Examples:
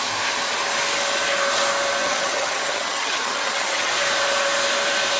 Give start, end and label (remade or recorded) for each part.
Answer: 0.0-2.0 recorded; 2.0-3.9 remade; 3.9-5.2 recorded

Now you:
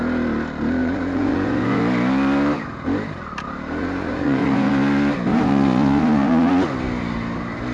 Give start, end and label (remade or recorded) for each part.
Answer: 0.0-0.8 recorded; 0.8-1.8 remade; 1.8-3.8 recorded; 3.8-4.7 remade; 4.7-5.3 recorded; 5.3-6.5 remade; 6.5-7.7 recorded